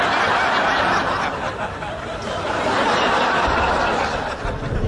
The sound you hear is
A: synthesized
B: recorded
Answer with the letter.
B